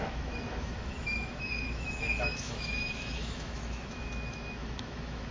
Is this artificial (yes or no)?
yes